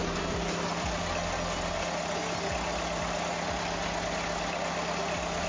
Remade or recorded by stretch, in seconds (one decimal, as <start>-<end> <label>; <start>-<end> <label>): 0.0-5.5 recorded